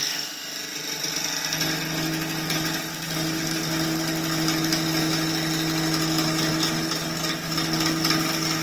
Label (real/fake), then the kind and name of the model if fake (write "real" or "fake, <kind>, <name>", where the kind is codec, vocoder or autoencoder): real